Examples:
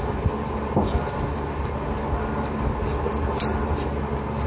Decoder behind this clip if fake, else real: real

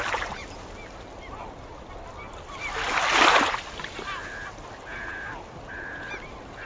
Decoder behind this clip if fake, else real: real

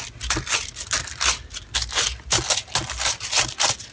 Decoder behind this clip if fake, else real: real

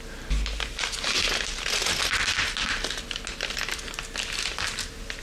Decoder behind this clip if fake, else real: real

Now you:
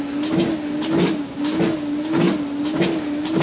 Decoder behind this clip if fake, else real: real